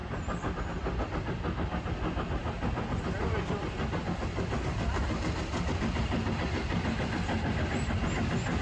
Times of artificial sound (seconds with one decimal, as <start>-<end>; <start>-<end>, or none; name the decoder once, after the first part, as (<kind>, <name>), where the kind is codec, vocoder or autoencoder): none